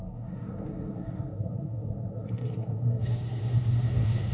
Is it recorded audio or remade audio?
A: remade